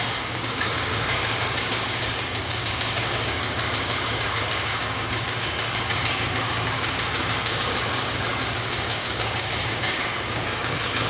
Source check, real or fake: fake